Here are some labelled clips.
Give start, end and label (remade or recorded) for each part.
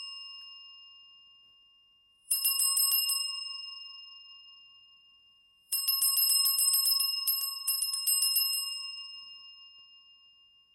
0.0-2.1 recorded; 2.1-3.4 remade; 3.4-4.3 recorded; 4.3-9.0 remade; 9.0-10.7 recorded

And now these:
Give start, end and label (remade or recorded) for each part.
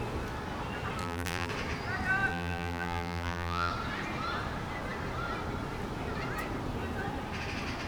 0.0-1.0 recorded; 1.0-1.5 remade; 1.5-2.3 recorded; 2.3-3.7 remade; 3.7-7.9 recorded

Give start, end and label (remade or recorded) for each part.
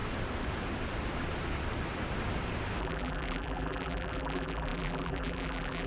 0.0-2.8 recorded; 2.8-5.9 remade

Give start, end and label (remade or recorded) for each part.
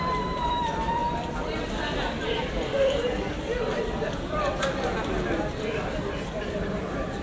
0.0-1.0 remade; 1.0-2.0 recorded; 2.0-3.3 remade; 3.3-3.8 recorded; 3.8-7.2 remade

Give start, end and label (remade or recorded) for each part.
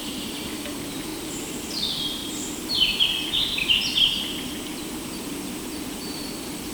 0.0-6.7 remade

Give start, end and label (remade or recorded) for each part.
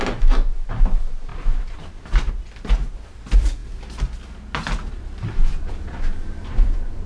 0.0-7.1 recorded